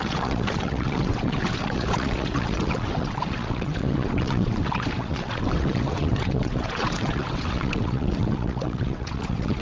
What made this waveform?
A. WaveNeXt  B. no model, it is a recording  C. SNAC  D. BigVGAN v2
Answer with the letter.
A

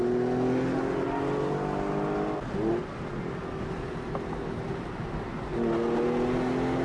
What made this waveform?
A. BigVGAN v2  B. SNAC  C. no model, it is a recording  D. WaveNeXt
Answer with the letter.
C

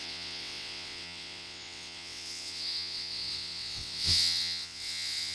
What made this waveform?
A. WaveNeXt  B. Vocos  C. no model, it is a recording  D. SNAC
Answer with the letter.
A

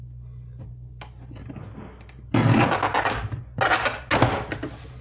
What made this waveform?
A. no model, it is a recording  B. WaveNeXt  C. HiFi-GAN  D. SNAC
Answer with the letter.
A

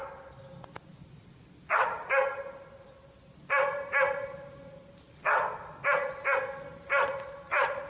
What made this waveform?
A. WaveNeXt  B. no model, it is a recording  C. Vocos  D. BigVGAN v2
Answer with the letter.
B